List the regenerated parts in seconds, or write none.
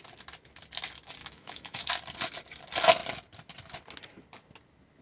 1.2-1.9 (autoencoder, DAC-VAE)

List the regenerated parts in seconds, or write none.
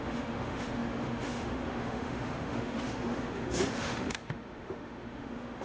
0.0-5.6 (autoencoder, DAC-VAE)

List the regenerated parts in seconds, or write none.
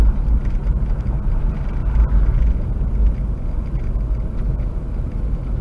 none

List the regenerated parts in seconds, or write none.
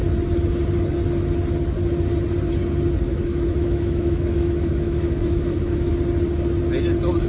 3.1-5.9 (autoencoder, DAC-VAE)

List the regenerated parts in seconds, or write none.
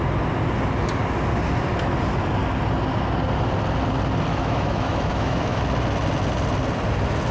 4.3-5.6 (autoencoder, DAC-VAE)